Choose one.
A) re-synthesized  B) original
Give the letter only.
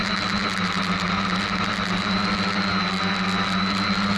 B